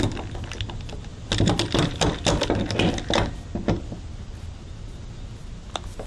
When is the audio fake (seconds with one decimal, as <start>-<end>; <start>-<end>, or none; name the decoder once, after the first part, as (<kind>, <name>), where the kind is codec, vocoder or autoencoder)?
none